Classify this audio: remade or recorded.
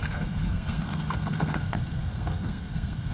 remade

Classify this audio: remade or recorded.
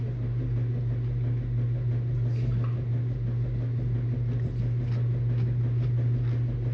recorded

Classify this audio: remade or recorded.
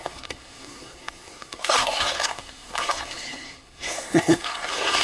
remade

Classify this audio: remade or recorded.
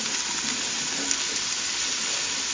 recorded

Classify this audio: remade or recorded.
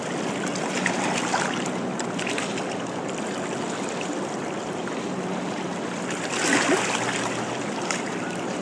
recorded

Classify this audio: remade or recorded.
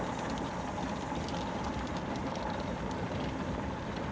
recorded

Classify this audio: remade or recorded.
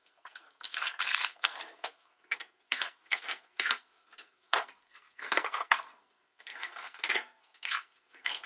remade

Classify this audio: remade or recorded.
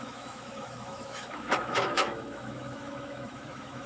remade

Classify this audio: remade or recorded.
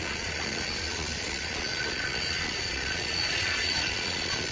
remade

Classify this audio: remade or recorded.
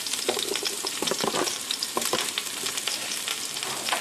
remade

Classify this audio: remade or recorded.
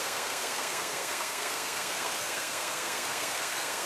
remade